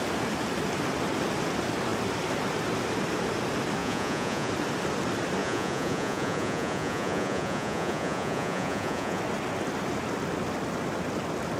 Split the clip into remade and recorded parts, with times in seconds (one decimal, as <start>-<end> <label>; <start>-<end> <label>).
0.0-3.8 recorded; 3.8-4.5 remade; 4.5-5.4 recorded; 5.4-9.2 remade; 9.2-11.6 recorded